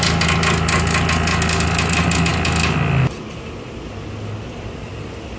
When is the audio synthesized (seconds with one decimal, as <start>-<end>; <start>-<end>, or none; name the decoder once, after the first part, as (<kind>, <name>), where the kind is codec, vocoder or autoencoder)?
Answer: none